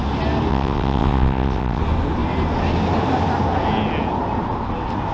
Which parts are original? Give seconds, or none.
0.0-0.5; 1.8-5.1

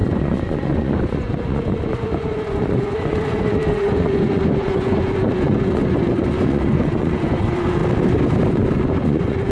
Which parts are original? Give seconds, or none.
7.8-8.5

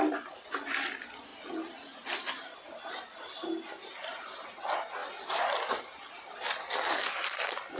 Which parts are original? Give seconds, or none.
0.0-7.8

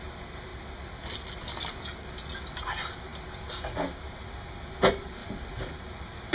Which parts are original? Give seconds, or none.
0.0-6.3

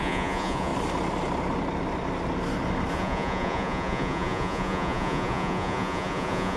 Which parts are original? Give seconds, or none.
0.7-2.9

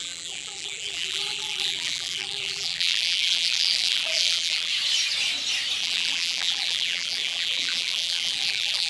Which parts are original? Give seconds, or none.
4.7-5.8

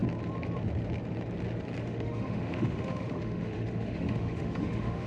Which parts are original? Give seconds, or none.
0.0-1.8